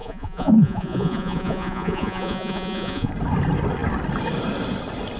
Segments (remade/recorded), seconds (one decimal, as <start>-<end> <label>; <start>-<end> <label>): 0.0-3.1 remade; 3.1-5.2 recorded